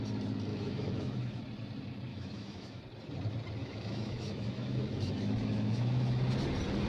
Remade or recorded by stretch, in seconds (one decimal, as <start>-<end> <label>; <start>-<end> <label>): 0.0-0.5 recorded; 0.5-1.4 remade; 1.4-2.1 recorded; 2.1-2.8 remade; 2.8-3.6 recorded; 3.6-6.3 remade; 6.3-6.9 recorded